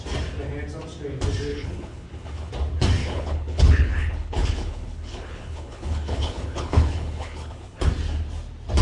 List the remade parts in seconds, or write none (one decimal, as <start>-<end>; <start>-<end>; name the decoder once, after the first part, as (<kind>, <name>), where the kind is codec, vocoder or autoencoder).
1.5-2.5 (codec, HILCodec); 3.0-7.9